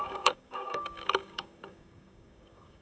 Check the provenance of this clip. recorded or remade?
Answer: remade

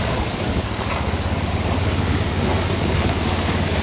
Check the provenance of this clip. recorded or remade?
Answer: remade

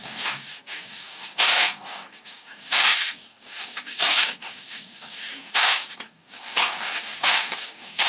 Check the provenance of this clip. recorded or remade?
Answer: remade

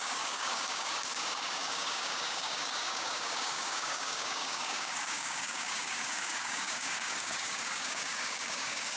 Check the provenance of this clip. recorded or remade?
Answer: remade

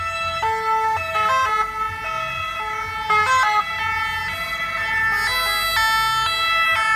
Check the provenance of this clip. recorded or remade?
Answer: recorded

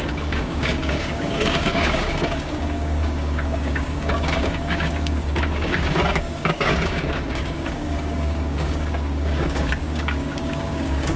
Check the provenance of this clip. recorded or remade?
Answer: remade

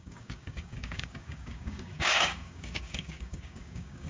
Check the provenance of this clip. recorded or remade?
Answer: remade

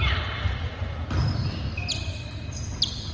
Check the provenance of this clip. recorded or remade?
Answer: recorded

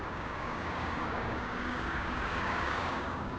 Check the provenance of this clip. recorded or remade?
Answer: remade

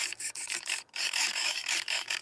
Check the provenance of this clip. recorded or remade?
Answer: remade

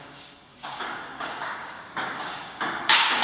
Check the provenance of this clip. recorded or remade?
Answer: remade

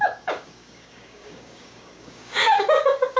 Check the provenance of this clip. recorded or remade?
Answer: remade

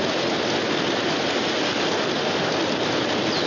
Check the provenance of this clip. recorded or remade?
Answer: recorded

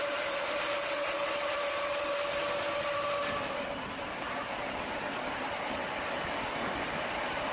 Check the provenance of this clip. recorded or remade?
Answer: recorded